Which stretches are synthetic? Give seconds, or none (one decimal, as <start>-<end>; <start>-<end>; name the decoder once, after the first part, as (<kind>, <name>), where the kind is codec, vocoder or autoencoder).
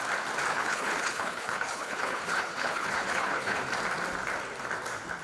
0.5-3.6 (codec, HILCodec)